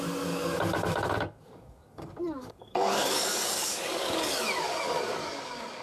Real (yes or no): no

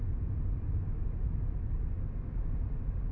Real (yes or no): yes